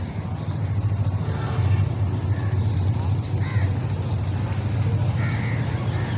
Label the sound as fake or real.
real